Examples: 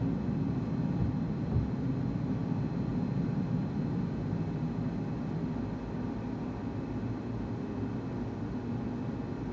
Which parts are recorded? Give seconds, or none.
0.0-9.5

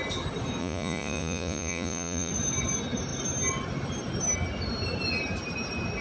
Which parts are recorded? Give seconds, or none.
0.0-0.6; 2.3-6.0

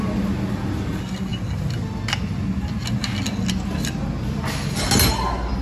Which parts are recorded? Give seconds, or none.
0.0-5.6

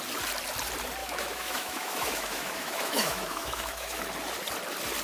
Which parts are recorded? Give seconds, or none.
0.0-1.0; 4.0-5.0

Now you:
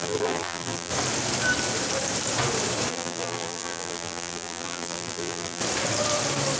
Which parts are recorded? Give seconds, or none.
0.9-2.9; 5.6-6.6